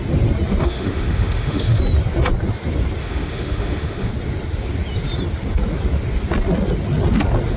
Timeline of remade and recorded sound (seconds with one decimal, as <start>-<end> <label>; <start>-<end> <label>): 0.0-0.6 recorded; 0.6-1.8 remade; 1.8-3.0 recorded; 3.0-4.1 remade; 4.1-7.6 recorded